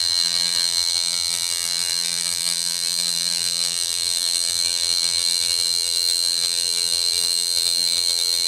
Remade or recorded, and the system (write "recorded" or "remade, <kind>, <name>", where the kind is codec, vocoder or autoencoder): remade, vocoder, BigVGAN v2